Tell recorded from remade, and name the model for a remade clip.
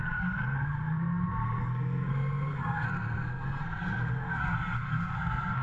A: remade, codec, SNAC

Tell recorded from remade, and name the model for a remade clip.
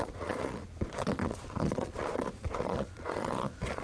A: remade, vocoder, Vocos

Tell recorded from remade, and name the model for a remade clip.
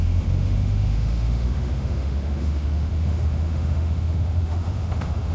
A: remade, autoencoder, DAC-VAE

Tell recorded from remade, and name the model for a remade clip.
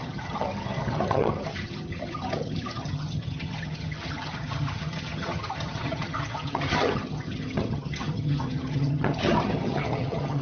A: remade, vocoder, HiFi-GAN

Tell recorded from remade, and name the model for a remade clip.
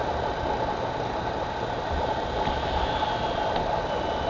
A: recorded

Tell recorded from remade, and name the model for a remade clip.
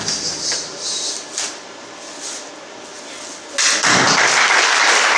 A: recorded